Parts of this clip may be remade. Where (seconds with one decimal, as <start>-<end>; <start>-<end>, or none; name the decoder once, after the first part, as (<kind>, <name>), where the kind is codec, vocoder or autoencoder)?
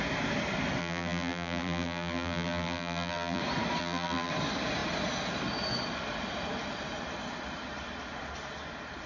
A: 0.8-3.4 (vocoder, BigVGAN v2); 3.8-4.3